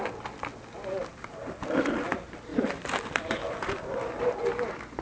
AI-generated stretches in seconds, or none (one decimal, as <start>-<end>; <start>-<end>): 1.1-1.8; 2.5-4.2